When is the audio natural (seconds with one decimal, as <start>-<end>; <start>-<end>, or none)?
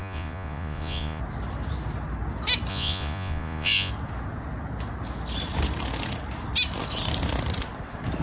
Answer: 1.2-2.7; 3.9-8.2